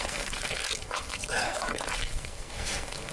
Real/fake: fake